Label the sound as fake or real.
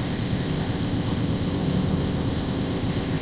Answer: fake